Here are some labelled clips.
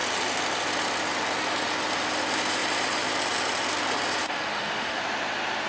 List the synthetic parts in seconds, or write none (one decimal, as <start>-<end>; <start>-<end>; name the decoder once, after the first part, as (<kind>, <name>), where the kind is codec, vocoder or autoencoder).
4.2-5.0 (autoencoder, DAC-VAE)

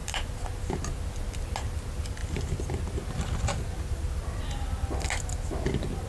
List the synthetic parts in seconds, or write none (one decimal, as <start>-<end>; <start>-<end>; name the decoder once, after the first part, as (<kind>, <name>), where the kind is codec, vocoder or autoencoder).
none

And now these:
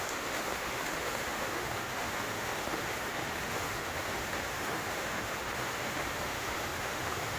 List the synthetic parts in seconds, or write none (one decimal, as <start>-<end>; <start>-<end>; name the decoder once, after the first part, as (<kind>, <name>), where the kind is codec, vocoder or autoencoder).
0.0-7.4 (autoencoder, DAC-VAE)

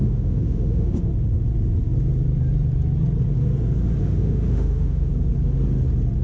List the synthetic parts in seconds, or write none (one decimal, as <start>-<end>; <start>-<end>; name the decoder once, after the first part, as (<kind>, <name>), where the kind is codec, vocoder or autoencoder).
0.0-1.1 (autoencoder, DAC-VAE); 4.0-5.1

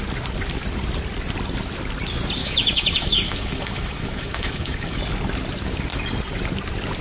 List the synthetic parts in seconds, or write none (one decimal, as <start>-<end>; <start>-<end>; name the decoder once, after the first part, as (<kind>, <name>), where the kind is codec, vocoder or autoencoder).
2.4-5.0 (autoencoder, DAC-VAE)